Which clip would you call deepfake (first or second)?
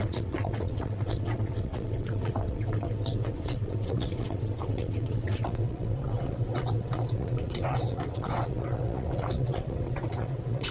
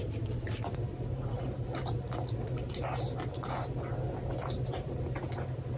first